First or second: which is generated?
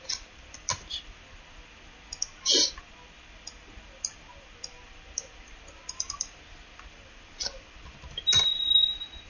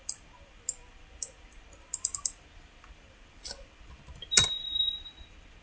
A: second